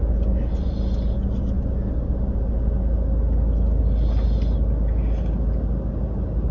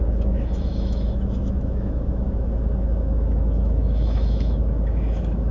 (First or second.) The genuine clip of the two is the first